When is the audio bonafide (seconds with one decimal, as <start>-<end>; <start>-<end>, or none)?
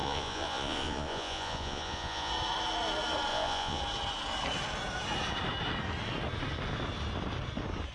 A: 2.3-3.3; 3.8-7.9